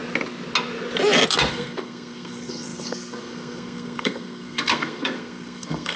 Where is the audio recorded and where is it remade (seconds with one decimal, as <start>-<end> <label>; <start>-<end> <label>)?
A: 0.0-1.5 recorded; 1.5-6.0 remade